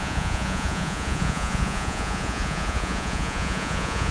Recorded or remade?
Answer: remade